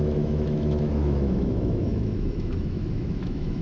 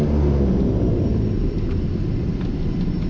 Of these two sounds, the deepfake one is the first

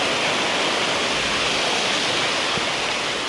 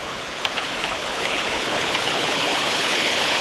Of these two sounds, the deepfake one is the second